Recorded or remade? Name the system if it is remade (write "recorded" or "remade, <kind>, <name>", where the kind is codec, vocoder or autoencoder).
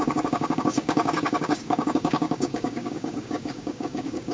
remade, codec, DAC